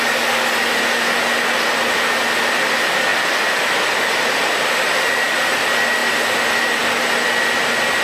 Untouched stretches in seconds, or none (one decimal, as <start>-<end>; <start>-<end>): 0.0-8.0

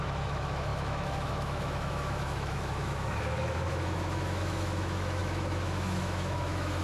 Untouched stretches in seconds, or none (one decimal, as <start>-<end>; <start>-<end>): none